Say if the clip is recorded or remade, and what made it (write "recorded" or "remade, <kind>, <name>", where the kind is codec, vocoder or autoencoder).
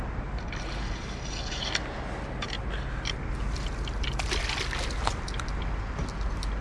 recorded